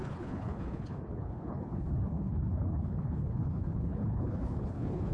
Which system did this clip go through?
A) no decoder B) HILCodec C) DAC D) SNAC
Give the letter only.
B